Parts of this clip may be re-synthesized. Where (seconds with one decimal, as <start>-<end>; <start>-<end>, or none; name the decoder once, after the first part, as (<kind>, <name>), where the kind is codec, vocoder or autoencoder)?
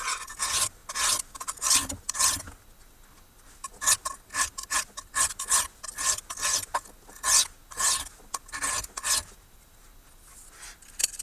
none